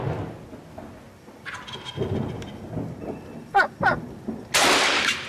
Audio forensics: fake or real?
real